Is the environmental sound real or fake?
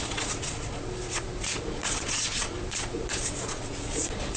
fake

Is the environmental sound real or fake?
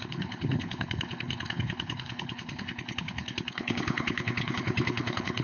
fake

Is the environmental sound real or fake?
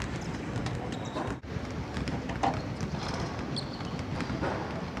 real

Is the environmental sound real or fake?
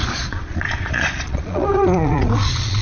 fake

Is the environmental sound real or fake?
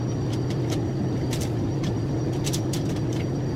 real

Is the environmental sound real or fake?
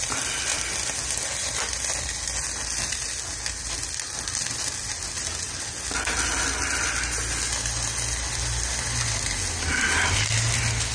real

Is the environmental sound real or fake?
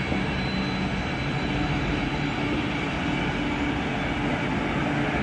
real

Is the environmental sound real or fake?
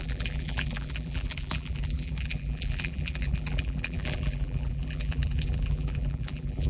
fake